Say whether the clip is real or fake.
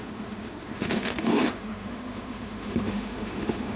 fake